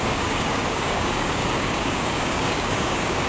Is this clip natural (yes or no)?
no